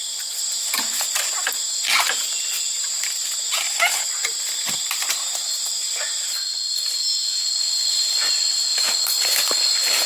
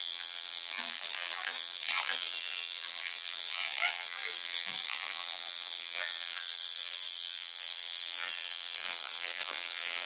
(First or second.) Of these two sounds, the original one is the first